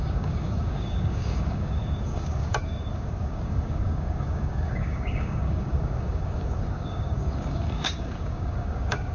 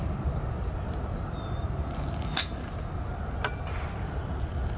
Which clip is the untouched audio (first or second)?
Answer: second